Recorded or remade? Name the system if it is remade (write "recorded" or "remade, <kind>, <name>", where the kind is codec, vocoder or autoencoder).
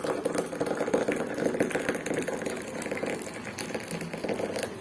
recorded